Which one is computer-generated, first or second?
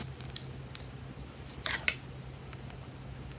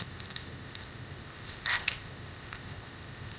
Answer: second